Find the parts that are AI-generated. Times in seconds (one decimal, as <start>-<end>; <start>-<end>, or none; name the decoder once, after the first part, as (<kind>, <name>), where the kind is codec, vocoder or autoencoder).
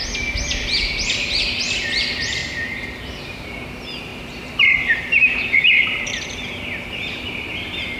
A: 2.4-3.0 (vocoder, BigVGAN v2); 4.1-7.5